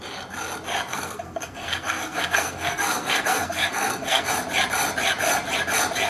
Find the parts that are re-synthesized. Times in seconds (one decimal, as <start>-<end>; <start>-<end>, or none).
0.9-4.3